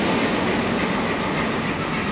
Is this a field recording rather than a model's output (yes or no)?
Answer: yes